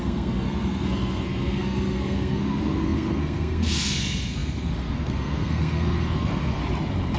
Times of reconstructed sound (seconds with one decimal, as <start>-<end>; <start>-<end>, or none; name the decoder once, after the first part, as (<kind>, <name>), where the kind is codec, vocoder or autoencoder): 0.0-6.6 (codec, SNAC)

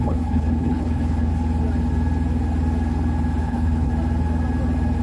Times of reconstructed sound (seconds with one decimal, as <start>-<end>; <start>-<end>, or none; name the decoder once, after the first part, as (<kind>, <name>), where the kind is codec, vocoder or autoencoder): 0.0-1.3 (codec, HILCodec); 3.4-3.9

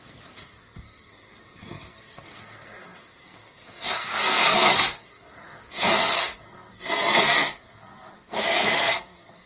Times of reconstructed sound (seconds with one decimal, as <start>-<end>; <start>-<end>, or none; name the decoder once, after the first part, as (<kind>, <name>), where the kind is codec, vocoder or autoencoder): 0.0-9.5 (codec, SNAC)

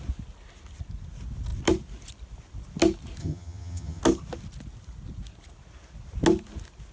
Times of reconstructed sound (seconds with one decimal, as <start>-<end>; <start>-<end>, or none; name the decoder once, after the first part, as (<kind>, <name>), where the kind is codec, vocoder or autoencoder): 3.2-4.0 (vocoder, HiFi-GAN)

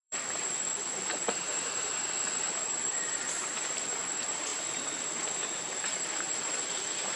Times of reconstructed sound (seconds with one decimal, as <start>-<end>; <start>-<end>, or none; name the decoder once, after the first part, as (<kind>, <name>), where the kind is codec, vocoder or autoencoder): 0.0-7.2 (vocoder, BigVGAN v2)